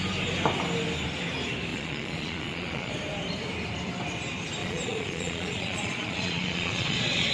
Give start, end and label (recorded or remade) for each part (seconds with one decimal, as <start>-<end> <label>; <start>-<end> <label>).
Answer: 0.0-1.7 recorded; 1.7-2.9 remade; 2.9-4.6 recorded; 4.6-7.3 remade